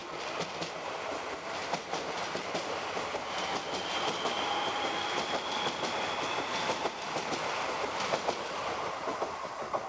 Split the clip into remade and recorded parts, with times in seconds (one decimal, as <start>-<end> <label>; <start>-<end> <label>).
0.0-9.9 recorded